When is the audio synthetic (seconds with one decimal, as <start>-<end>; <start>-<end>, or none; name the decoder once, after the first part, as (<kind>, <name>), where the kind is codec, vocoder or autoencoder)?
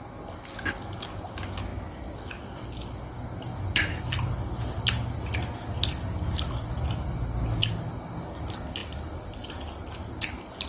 none